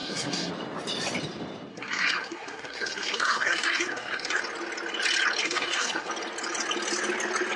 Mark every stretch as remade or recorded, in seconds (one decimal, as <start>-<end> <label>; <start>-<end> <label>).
0.0-0.5 remade; 0.5-1.7 recorded; 1.7-4.4 remade; 4.4-5.4 recorded; 5.4-6.1 remade; 6.1-7.6 recorded